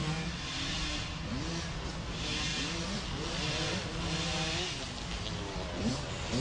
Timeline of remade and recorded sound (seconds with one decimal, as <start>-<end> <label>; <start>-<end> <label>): 0.0-6.4 recorded